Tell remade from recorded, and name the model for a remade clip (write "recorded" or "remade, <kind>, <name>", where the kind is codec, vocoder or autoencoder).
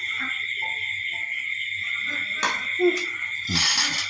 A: recorded